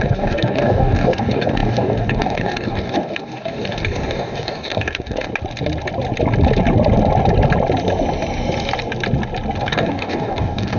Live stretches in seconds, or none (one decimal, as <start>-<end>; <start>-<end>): 5.3-9.6